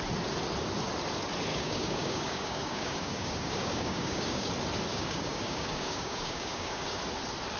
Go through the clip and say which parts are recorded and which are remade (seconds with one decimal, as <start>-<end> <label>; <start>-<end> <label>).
0.0-1.5 recorded; 1.5-4.5 remade; 4.5-4.9 recorded; 4.9-7.0 remade; 7.0-7.6 recorded